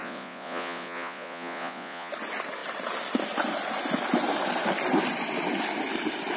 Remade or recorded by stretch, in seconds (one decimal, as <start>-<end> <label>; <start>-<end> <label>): 0.0-2.1 remade; 2.1-6.4 recorded